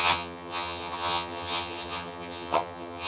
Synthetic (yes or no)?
yes